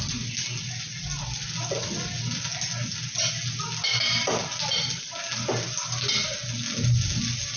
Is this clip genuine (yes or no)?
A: yes